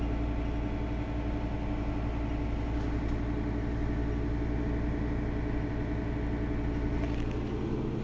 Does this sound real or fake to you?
real